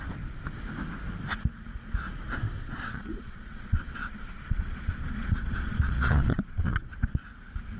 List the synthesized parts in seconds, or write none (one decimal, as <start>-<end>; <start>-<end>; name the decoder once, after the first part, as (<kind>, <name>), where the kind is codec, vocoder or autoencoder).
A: 2.6-6.9 (vocoder, Vocos)